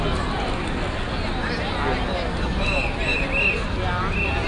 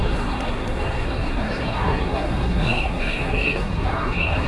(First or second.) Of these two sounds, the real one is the first